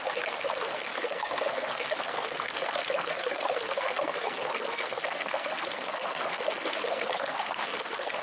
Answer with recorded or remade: remade